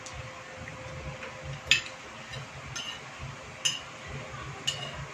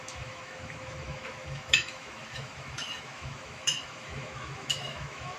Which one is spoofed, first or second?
second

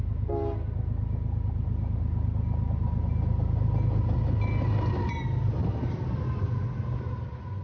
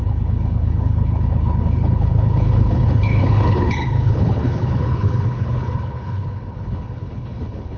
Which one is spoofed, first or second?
second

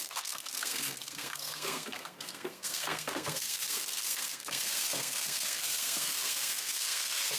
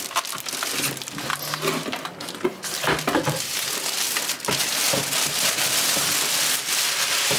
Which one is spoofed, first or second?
first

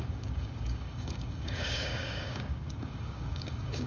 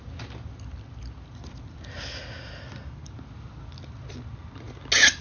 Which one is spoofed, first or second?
first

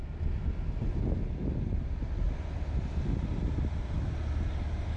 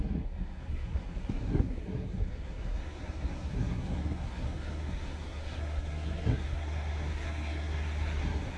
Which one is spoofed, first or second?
second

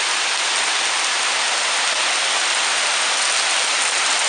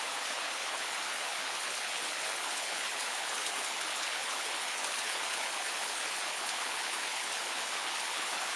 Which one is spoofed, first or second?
second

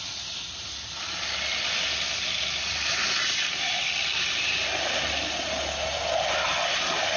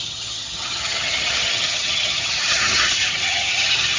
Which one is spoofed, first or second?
second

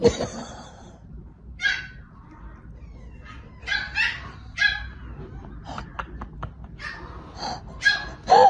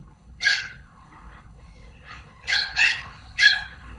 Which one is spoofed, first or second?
second